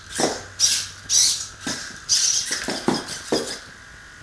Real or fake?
real